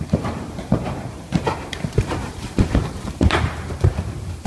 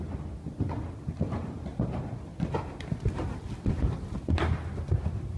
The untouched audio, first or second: second